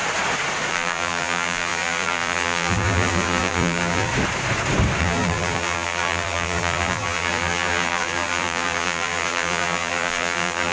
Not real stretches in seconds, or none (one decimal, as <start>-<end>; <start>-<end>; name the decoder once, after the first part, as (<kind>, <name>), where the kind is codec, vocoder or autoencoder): 0.7-4.1 (vocoder, BigVGAN v2); 5.0-10.7